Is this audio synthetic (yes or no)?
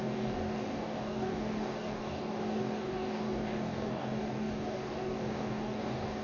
yes